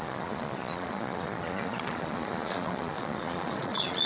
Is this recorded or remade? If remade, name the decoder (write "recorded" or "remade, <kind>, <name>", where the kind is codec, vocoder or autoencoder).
remade, vocoder, Vocos